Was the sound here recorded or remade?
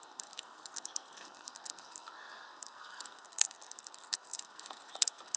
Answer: remade